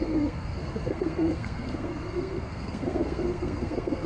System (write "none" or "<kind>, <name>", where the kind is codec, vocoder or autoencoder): codec, SNAC